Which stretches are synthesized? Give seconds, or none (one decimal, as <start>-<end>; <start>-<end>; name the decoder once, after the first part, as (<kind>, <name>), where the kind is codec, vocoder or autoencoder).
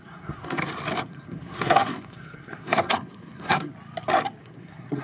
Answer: 0.0-0.6 (codec, SNAC); 1.1-3.7; 4.4-5.0